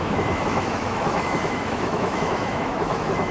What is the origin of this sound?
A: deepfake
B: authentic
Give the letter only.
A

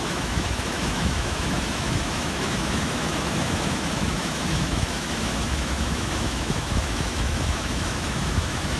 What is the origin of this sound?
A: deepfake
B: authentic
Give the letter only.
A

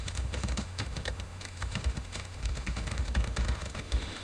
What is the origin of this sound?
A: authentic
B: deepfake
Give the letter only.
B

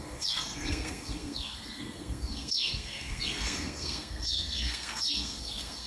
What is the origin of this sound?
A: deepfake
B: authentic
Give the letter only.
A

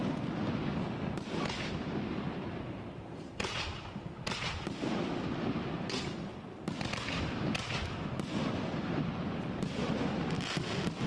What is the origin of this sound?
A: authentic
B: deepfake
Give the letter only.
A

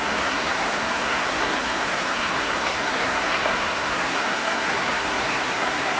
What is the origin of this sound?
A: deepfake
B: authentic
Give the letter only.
A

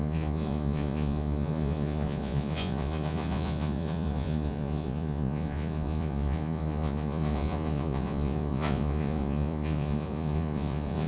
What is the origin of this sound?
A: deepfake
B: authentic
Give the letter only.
A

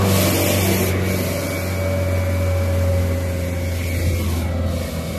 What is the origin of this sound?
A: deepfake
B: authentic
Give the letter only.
B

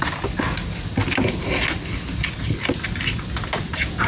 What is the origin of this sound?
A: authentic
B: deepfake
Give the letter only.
A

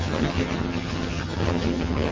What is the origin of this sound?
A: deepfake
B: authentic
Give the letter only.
A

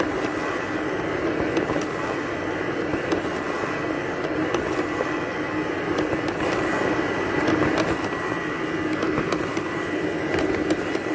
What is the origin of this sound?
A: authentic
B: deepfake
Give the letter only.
A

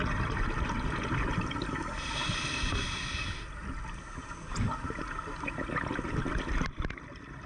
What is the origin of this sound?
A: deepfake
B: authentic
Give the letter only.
B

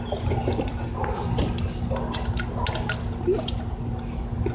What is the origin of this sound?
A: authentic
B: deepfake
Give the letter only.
A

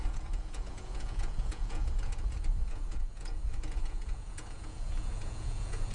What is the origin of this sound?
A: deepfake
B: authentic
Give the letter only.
A